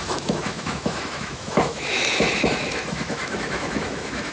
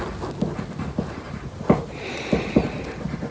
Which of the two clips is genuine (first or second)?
second